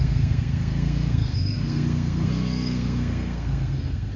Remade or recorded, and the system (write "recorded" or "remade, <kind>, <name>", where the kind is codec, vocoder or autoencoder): remade, codec, SNAC